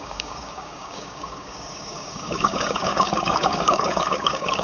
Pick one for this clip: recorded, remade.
remade